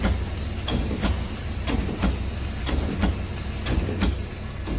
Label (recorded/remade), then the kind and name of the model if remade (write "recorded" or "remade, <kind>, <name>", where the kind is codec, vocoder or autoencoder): recorded